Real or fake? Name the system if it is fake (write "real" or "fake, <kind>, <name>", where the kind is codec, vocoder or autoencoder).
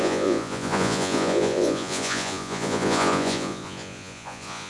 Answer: fake, vocoder, Vocos